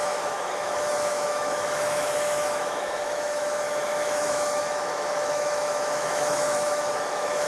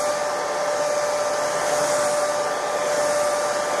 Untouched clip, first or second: second